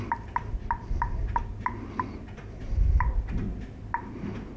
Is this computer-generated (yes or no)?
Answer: no